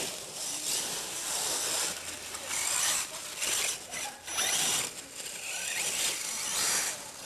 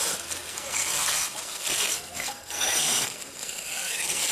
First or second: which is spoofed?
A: second